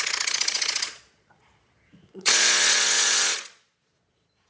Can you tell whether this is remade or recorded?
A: remade